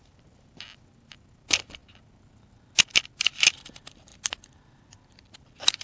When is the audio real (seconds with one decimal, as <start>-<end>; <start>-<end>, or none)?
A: 0.0-5.8